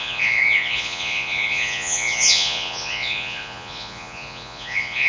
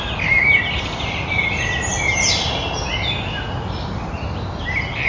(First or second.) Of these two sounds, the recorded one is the second